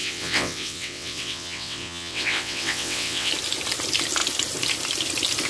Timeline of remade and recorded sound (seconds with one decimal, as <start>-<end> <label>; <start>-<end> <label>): 0.0-3.3 remade; 3.3-5.5 recorded